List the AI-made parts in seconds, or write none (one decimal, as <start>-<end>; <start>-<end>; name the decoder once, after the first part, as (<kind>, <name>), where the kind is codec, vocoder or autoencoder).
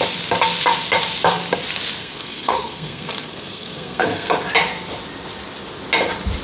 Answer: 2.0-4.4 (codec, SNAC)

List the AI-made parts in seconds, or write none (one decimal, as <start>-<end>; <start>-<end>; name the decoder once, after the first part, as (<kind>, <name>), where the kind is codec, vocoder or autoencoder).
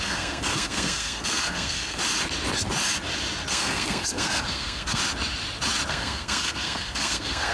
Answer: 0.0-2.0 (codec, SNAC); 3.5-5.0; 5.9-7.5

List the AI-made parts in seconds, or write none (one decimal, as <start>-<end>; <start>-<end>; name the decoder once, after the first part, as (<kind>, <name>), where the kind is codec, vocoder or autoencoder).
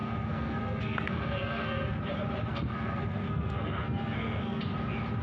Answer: 0.0-2.0 (codec, SNAC); 2.5-4.6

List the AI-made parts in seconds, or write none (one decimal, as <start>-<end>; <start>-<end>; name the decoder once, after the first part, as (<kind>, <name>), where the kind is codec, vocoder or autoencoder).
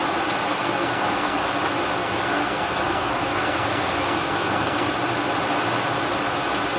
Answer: 0.5-1.5 (codec, SNAC); 2.0-4.9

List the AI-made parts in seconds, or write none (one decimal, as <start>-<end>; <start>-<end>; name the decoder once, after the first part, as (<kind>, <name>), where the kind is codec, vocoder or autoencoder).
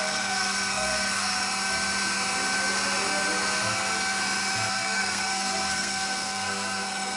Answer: 0.0-1.4 (codec, SNAC); 4.7-7.2